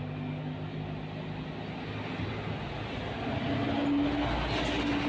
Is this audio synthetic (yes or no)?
no